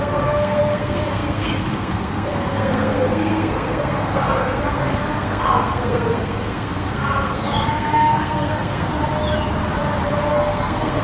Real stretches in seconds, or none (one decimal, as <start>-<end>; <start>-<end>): 8.9-10.3

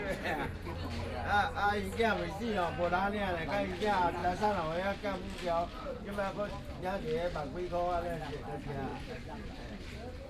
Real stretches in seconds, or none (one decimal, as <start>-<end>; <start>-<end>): 0.0-10.3

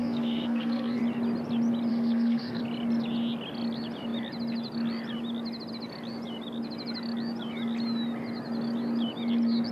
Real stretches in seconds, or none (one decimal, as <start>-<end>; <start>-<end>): 1.0-1.9; 2.6-9.7

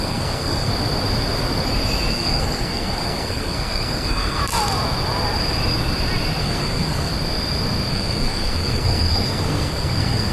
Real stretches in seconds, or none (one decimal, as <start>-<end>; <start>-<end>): 0.7-2.1; 4.4-6.4; 7.1-7.9

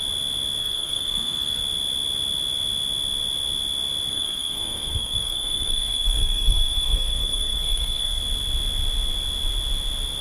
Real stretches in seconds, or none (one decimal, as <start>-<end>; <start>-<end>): 0.0-0.6; 1.6-4.1; 8.2-10.2

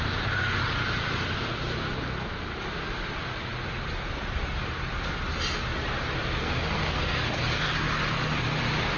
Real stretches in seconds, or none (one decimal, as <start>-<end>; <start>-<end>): 0.0-6.4; 7.6-9.0